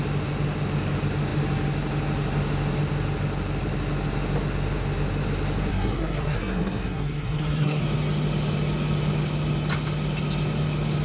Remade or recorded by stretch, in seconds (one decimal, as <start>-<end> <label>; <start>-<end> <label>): 0.0-5.7 recorded; 5.7-7.8 remade; 7.8-11.0 recorded